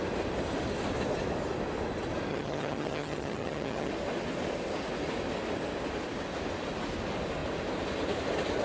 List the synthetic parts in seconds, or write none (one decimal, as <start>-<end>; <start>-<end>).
2.3-3.9